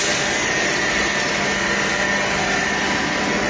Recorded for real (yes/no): yes